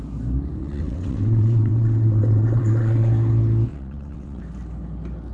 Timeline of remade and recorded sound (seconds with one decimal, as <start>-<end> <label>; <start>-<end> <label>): 0.0-0.6 recorded; 0.6-3.1 remade; 3.1-3.7 recorded; 3.7-4.4 remade; 4.4-5.3 recorded